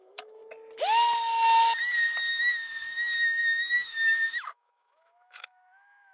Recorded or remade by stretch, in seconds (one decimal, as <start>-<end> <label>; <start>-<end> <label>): 0.0-0.4 remade; 0.4-2.3 recorded; 2.3-6.1 remade